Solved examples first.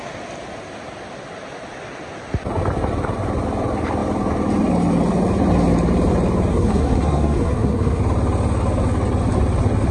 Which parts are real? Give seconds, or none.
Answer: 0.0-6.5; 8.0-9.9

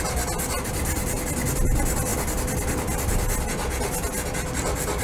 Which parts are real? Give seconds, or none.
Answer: 0.0-5.0